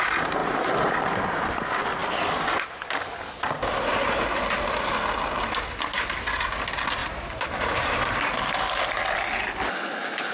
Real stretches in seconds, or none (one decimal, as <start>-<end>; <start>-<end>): 0.0-0.4; 1.2-7.0; 8.2-10.3